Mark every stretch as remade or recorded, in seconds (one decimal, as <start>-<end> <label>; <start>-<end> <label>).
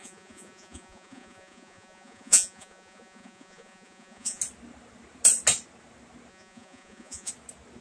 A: 0.0-4.4 remade; 4.4-6.3 recorded; 6.3-7.3 remade; 7.3-7.8 recorded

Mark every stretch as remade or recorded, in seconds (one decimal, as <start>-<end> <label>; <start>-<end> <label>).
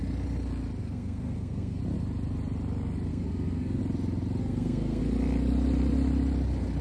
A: 0.0-0.8 recorded; 0.8-1.8 remade; 1.8-3.1 recorded; 3.1-3.8 remade; 3.8-4.4 recorded; 4.4-5.0 remade; 5.0-6.8 recorded